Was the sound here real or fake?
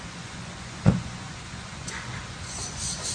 fake